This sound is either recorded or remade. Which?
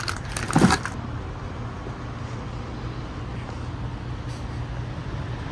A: recorded